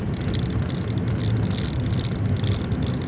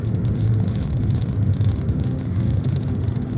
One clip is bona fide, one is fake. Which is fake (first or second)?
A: second